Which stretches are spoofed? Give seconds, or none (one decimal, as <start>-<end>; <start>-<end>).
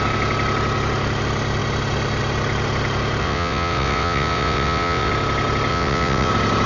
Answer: 3.2-5.1; 5.7-6.3